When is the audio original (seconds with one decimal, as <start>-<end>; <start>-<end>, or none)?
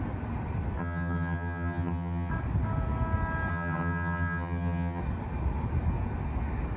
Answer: 0.0-0.8; 2.3-3.5; 5.0-6.8